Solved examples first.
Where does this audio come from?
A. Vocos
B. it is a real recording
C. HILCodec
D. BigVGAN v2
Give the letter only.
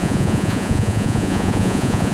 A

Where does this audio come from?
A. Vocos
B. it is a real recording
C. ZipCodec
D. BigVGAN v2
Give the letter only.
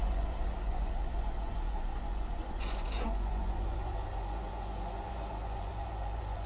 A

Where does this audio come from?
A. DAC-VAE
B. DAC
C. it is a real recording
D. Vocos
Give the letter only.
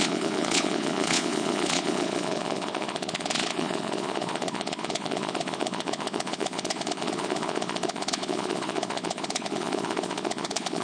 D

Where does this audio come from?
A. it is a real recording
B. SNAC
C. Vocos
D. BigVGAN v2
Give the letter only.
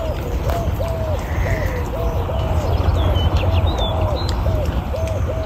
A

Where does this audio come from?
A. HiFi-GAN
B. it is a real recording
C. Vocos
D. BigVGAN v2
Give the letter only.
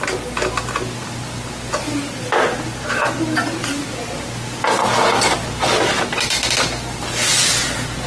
B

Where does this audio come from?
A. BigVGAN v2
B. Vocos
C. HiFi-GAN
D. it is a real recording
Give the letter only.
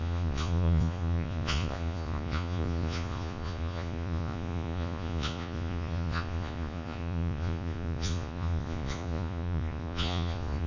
B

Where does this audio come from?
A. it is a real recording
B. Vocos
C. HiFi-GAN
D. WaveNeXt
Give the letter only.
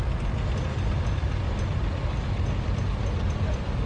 A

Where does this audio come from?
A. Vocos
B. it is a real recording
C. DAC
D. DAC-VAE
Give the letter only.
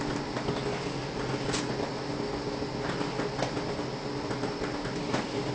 B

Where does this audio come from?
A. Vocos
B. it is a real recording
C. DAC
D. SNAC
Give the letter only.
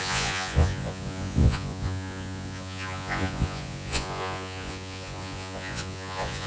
A